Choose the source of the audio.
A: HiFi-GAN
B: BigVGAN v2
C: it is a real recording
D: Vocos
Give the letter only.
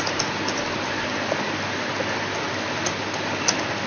C